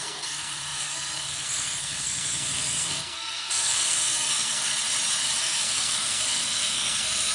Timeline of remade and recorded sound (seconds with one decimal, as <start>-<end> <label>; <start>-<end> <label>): 0.0-4.7 remade; 4.7-5.4 recorded; 5.4-7.3 remade